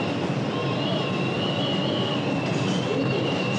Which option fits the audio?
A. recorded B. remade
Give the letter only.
A